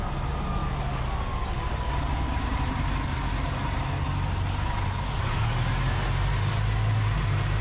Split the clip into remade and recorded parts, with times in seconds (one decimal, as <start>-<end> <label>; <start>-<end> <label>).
0.0-7.6 recorded